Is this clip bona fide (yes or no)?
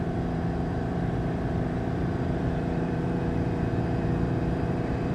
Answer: no